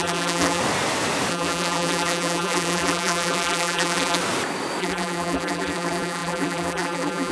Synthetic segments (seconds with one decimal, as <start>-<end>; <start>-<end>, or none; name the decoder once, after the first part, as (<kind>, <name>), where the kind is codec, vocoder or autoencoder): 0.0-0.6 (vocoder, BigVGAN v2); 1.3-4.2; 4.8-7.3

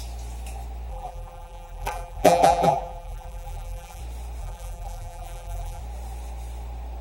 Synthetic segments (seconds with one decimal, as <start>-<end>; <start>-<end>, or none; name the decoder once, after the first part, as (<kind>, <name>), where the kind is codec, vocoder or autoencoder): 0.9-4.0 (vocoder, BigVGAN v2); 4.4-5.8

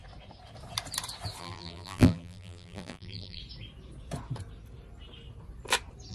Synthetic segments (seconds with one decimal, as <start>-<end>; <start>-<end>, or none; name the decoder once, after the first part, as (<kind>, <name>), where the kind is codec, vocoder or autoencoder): 1.4-3.4 (vocoder, BigVGAN v2)

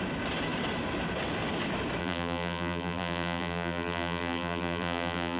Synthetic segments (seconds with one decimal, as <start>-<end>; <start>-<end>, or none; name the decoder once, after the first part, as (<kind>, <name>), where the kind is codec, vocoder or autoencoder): 2.0-5.4 (vocoder, BigVGAN v2)

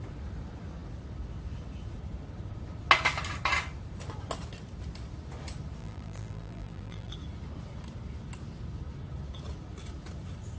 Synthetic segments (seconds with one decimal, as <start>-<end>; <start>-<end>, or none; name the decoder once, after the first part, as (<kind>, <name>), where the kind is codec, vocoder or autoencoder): 5.8-7.1 (vocoder, BigVGAN v2)